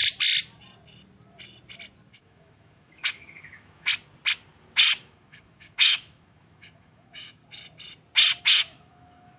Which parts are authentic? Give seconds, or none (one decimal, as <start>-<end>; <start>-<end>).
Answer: 0.0-2.1; 3.9-5.0; 7.4-8.4